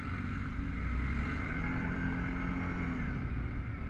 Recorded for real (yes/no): yes